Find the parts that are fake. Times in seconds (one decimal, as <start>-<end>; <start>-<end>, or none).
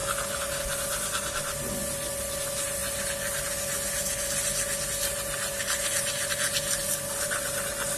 none